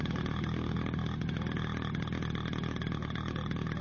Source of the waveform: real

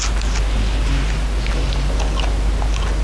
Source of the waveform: real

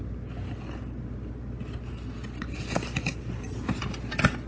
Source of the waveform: real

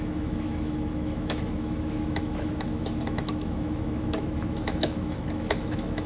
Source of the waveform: fake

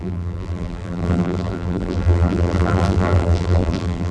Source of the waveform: fake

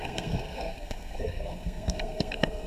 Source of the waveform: fake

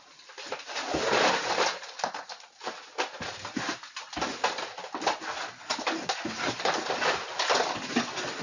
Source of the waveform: real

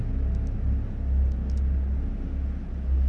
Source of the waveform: real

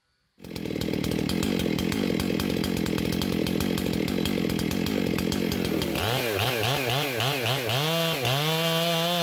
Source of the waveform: real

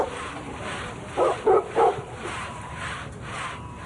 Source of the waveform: fake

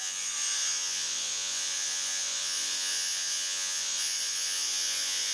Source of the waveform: fake